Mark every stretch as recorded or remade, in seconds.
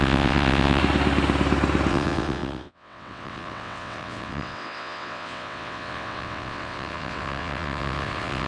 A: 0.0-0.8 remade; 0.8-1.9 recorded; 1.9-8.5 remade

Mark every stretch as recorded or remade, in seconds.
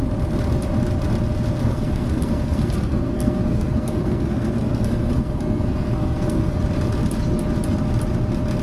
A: 0.0-1.6 recorded; 1.6-6.6 remade; 6.6-8.6 recorded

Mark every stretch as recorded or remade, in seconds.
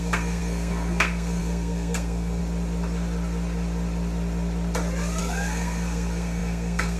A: 0.0-2.4 remade; 2.4-5.2 recorded; 5.2-7.0 remade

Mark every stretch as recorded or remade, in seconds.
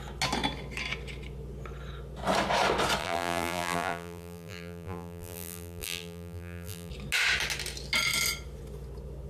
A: 0.0-3.0 recorded; 3.0-6.9 remade; 6.9-9.3 recorded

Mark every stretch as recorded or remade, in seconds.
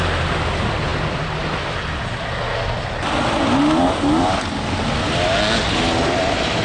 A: 0.0-6.6 recorded